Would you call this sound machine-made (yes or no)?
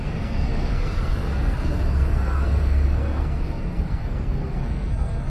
yes